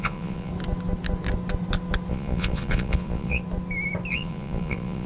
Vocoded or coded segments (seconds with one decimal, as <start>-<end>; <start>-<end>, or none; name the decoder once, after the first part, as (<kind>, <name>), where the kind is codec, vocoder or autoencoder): 0.0-0.5 (vocoder, Vocos); 2.1-3.4; 4.1-5.1

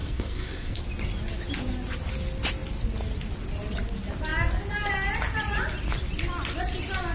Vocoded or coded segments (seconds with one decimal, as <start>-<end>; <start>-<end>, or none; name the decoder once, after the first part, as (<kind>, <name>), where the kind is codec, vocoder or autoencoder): 0.0-0.8 (codec, SNAC)

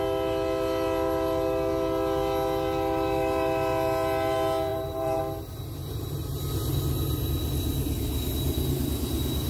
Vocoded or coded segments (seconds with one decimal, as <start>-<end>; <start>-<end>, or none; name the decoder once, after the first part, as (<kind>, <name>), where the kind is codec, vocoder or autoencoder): 4.7-5.2 (vocoder, BigVGAN v2); 5.8-6.4

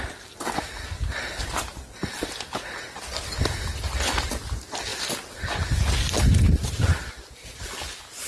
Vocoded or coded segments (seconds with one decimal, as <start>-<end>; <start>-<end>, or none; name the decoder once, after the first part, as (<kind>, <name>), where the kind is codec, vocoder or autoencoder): none

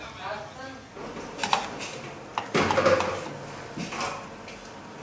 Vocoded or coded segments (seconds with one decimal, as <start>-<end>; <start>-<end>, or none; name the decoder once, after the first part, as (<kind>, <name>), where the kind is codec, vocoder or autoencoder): none

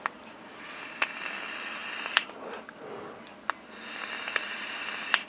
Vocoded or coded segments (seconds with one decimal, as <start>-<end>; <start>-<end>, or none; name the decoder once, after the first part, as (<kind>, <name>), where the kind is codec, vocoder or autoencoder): none

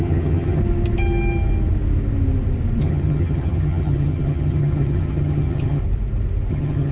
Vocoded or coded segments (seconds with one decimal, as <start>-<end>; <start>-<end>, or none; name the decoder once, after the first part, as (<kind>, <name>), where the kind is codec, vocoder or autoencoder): 0.0-0.6 (vocoder, HiFi-GAN); 2.8-5.8; 6.5-6.9

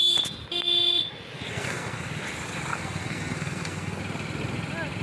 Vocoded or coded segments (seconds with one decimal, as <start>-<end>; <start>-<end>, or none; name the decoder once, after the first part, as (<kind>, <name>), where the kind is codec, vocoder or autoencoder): 1.5-2.1 (codec, SNAC); 2.7-4.0